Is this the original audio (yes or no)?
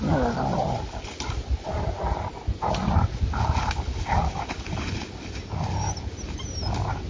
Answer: yes